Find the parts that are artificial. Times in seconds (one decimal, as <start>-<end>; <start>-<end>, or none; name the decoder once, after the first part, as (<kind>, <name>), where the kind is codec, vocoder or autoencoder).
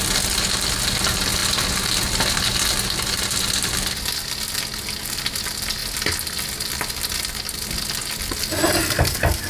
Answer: none